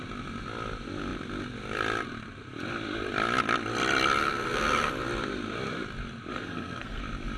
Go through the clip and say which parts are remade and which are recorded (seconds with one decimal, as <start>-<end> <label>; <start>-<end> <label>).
0.0-4.2 recorded; 4.2-4.9 remade; 4.9-6.3 recorded; 6.3-7.0 remade; 7.0-7.4 recorded